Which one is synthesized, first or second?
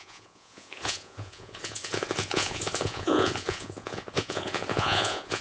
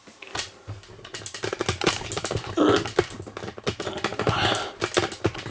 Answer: first